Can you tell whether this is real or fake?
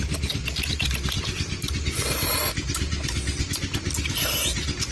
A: real